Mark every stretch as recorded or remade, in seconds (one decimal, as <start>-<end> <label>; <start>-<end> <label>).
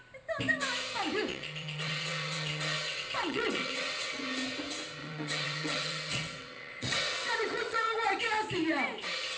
0.0-1.3 recorded; 1.3-4.2 remade; 4.2-5.0 recorded; 5.0-8.2 remade; 8.2-9.4 recorded